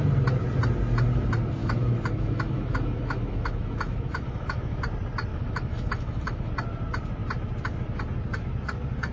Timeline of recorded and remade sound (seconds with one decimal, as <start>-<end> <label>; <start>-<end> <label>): 0.0-1.6 recorded; 1.6-4.8 remade; 4.8-5.3 recorded; 5.3-6.5 remade; 6.5-9.1 recorded